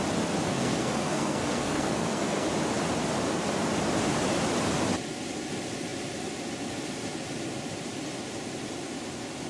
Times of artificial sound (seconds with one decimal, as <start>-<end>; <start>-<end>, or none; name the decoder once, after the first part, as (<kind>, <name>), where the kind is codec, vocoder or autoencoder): 0.5-2.5 (codec, SNAC)